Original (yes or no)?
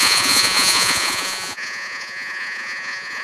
no